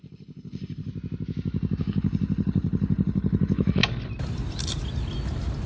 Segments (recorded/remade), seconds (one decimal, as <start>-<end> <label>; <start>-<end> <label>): 0.0-0.9 remade; 0.9-1.8 recorded; 1.8-3.8 remade; 3.8-5.7 recorded